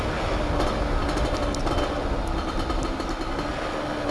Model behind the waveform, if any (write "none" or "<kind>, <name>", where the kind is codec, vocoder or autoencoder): none